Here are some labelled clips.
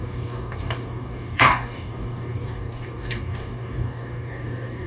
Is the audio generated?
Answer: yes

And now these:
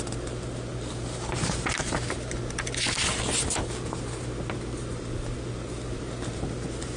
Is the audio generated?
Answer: no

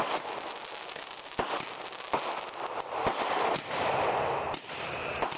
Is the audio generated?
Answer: no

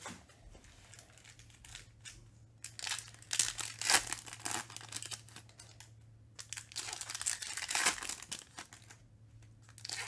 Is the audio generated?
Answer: no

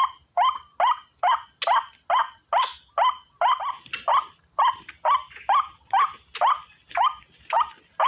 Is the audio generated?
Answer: no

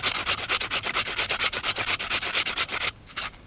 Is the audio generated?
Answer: no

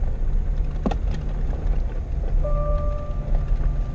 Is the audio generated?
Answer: no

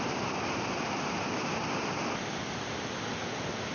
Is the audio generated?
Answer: no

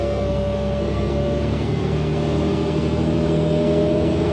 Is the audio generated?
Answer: yes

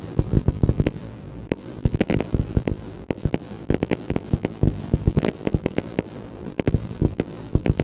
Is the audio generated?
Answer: yes